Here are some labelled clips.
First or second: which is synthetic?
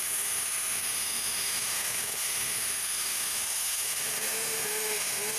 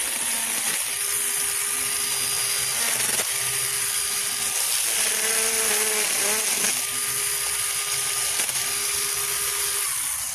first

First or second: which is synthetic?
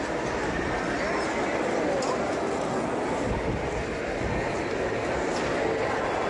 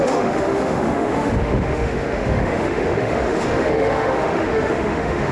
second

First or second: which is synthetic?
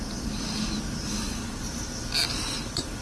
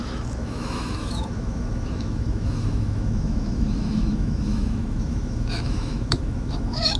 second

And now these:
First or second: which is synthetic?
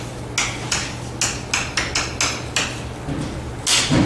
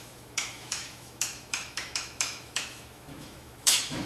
second